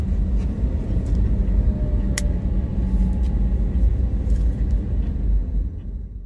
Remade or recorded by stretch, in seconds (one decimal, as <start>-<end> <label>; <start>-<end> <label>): 0.0-6.3 recorded